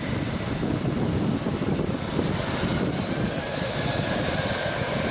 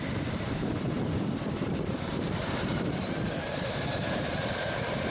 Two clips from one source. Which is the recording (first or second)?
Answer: first